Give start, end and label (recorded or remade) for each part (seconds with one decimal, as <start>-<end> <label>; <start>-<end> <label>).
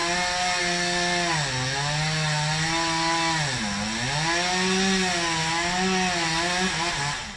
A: 0.0-7.4 recorded